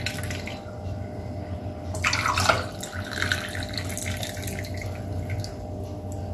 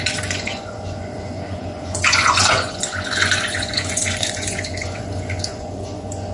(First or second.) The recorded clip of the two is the first